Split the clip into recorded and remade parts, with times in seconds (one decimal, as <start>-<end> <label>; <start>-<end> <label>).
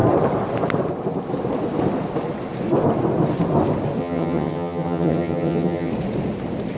0.0-4.0 recorded; 4.0-5.9 remade; 5.9-6.8 recorded